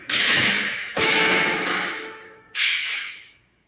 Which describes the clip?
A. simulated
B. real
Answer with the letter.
A